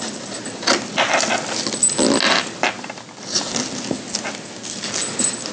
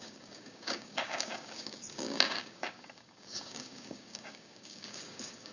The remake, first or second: second